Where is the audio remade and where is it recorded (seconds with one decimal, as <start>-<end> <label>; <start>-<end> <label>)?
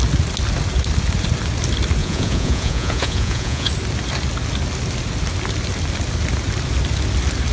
0.0-2.0 recorded; 2.0-3.7 remade; 3.7-7.5 recorded